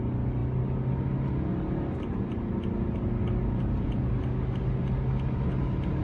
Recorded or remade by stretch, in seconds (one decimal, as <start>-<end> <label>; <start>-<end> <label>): 0.0-3.4 recorded; 3.4-4.1 remade; 4.1-6.0 recorded